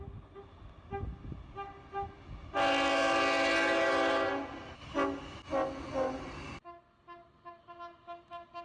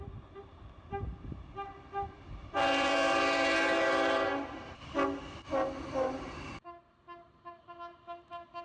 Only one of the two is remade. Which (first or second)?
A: second